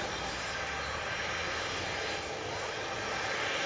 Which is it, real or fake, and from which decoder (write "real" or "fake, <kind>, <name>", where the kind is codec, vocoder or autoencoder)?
real